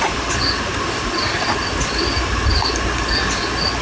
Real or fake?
real